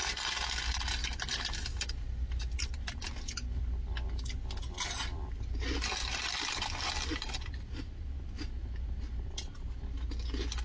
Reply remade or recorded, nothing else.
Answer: recorded